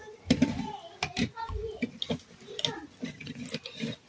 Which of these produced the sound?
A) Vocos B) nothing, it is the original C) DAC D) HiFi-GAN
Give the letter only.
B